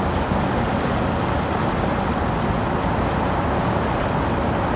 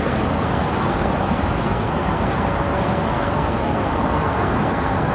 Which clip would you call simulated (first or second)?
second